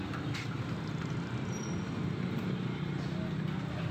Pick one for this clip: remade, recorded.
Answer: recorded